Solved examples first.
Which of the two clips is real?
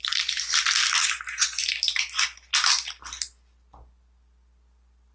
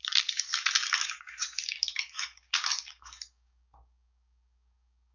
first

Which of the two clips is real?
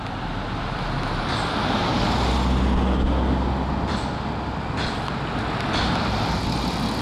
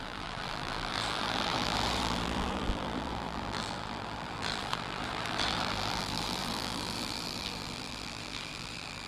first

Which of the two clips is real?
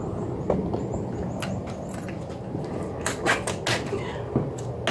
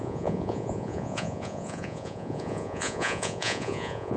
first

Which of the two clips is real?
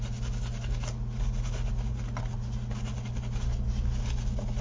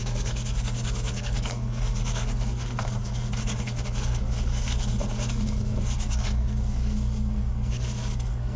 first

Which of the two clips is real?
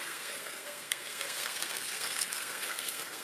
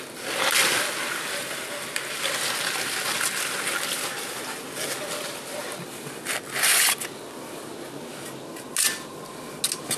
second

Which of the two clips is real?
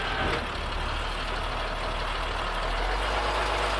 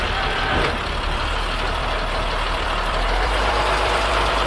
first